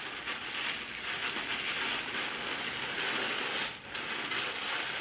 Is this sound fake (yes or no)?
no